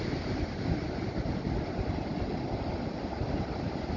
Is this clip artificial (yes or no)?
no